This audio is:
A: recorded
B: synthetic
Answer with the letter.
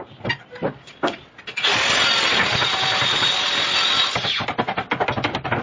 A